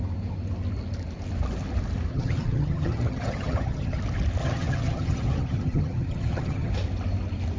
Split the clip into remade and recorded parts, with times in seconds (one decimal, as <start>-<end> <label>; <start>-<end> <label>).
0.0-2.1 recorded; 2.1-4.0 remade; 4.0-4.4 recorded; 4.4-6.7 remade; 6.7-7.6 recorded